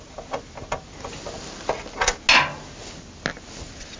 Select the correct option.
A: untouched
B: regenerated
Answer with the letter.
A